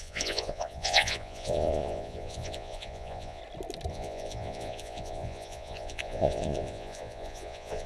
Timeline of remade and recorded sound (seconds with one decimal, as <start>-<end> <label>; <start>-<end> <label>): 0.0-3.4 remade; 3.4-3.9 recorded; 3.9-7.9 remade